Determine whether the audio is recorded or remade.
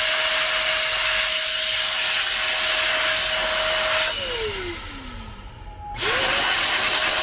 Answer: recorded